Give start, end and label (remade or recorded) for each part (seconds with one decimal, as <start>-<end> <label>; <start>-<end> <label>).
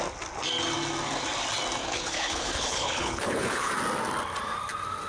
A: 0.0-1.8 recorded; 1.8-3.7 remade; 3.7-5.1 recorded